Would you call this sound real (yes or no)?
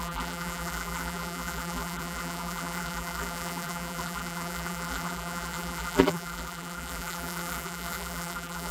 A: no